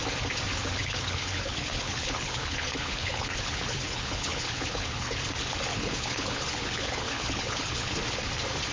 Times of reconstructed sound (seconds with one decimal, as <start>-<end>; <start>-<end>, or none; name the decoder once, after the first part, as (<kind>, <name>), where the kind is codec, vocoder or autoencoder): 0.5-5.2 (codec, HILCodec); 5.7-7.9